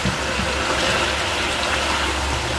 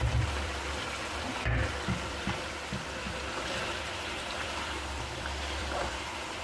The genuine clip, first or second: first